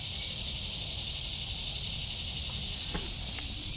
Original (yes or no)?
no